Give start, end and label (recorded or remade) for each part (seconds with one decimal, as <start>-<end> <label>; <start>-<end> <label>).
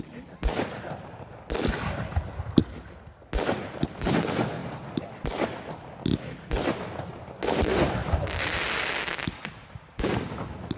0.0-10.8 recorded